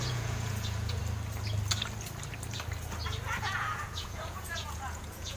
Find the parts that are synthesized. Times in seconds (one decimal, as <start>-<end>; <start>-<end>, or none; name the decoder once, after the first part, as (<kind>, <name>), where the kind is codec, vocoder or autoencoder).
0.0-1.0 (vocoder, Vocos); 3.4-5.4